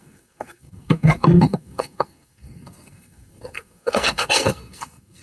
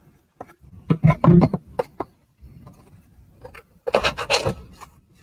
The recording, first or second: second